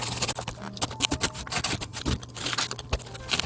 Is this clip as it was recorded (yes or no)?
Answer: yes